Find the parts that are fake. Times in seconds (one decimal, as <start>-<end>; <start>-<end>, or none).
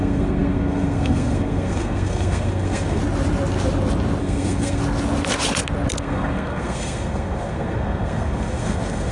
0.0-3.0; 4.2-4.8; 6.0-9.1